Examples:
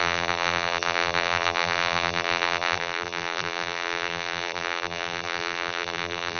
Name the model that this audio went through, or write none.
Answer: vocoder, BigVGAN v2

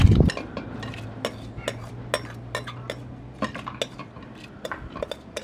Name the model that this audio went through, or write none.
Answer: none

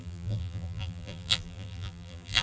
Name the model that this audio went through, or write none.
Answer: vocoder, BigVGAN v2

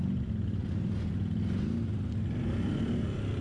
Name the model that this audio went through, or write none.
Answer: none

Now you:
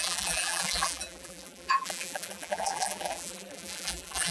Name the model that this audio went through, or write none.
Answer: vocoder, BigVGAN v2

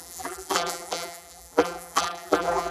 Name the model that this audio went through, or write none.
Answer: vocoder, BigVGAN v2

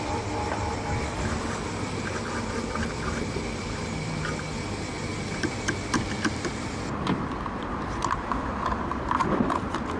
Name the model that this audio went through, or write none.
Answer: vocoder, BigVGAN v2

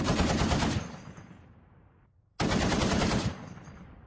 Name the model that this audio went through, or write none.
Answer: vocoder, BigVGAN v2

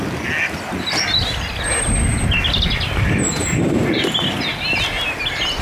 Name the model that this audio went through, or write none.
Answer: none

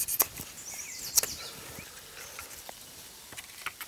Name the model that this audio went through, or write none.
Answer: vocoder, BigVGAN v2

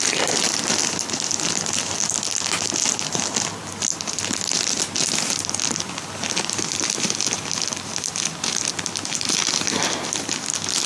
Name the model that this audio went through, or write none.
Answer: none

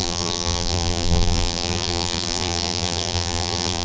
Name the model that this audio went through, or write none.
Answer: vocoder, BigVGAN v2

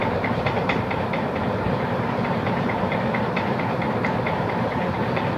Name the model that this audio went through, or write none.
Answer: vocoder, BigVGAN v2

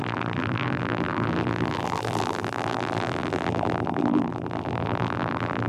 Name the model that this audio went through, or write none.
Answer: vocoder, BigVGAN v2